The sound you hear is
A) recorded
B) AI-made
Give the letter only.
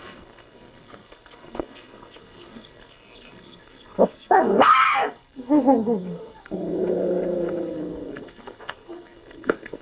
B